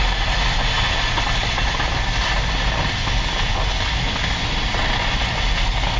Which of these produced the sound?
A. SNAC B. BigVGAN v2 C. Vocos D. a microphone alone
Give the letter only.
D